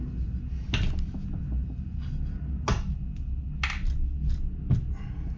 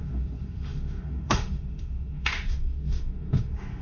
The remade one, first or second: second